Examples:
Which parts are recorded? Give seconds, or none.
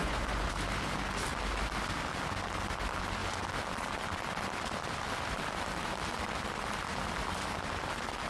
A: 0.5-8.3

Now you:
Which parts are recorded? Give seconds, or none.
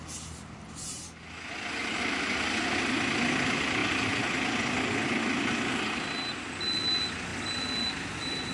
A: 0.0-1.8; 2.4-3.8; 4.4-8.5